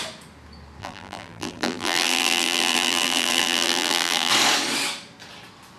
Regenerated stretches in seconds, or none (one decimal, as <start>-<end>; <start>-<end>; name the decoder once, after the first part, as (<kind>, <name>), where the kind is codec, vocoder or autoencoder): 0.8-4.3 (vocoder, BigVGAN v2)